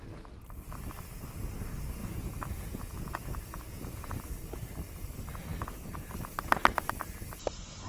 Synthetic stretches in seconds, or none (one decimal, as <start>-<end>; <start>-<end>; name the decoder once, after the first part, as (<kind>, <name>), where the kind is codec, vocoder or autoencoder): 2.0-4.2 (vocoder, Vocos)